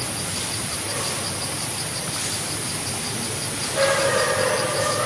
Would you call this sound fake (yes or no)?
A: no